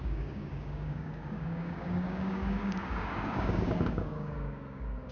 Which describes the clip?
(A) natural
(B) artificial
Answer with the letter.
B